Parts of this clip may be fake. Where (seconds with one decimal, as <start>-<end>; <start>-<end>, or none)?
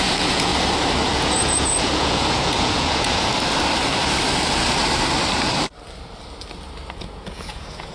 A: 0.0-0.5; 1.1-3.3; 7.0-7.9